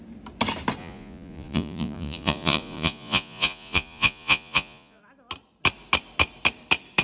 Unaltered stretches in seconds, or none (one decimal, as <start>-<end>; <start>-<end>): 0.0-0.8; 5.0-7.0